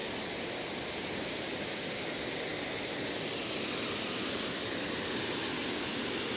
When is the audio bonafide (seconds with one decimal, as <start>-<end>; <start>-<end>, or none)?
0.0-6.4